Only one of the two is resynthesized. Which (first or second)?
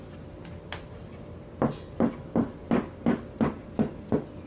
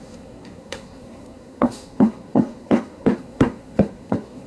second